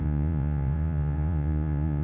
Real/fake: fake